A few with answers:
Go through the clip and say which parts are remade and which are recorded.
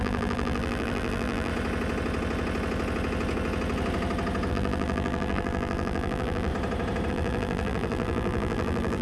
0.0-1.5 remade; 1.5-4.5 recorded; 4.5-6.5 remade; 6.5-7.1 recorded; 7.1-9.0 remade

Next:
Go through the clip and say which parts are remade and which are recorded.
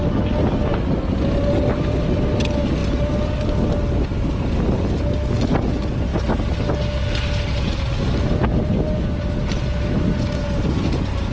0.0-11.3 recorded